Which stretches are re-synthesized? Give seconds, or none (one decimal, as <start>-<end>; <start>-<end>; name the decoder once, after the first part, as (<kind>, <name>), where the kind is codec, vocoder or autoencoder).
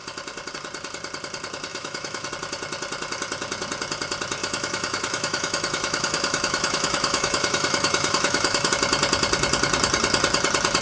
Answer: 1.7-2.3 (autoencoder, DAC-VAE); 4.4-8.7